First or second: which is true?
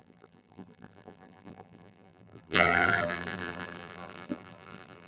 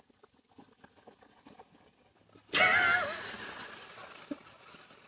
second